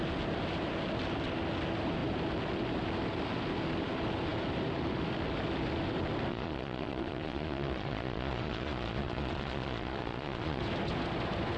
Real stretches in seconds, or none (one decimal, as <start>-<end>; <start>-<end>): 0.0-6.3; 10.6-11.6